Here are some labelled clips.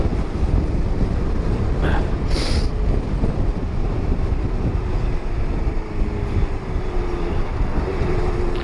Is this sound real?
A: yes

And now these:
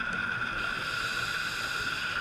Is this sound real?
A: yes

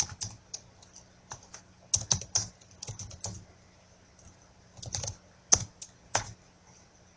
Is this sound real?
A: yes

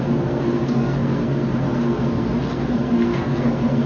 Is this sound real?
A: no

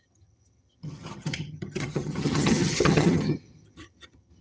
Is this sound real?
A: no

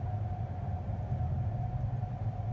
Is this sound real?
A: yes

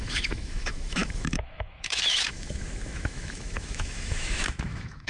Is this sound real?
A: no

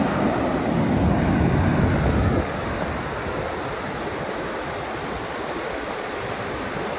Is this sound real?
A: yes